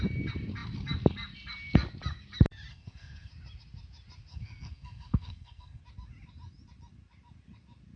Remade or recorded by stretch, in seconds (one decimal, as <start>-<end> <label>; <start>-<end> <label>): 0.0-2.7 recorded; 2.7-3.3 remade; 3.3-4.3 recorded; 4.3-5.8 remade; 5.8-8.0 recorded